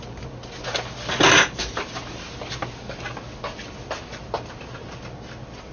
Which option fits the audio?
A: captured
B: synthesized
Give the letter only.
A